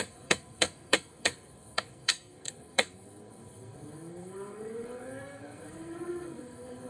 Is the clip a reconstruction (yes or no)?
yes